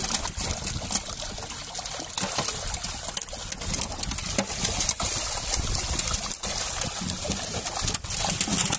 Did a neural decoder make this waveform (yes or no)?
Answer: no